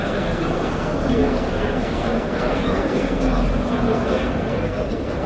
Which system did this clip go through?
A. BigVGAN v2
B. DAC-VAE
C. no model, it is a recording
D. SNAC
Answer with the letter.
D